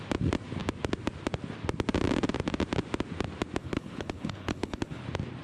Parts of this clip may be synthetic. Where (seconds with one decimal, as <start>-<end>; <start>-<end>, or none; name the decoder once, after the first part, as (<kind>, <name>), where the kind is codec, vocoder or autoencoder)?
3.6-5.0 (codec, HILCodec)